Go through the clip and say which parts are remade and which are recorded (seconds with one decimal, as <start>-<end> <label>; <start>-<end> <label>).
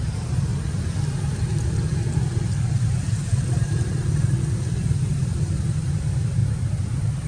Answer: 0.0-0.5 remade; 0.5-4.9 recorded; 4.9-7.3 remade